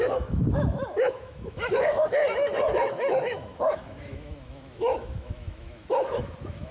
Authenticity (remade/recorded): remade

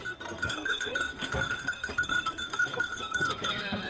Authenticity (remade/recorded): remade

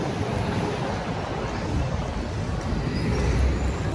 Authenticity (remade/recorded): recorded